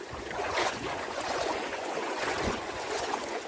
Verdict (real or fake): fake